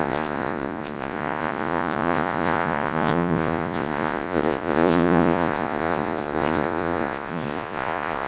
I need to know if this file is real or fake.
fake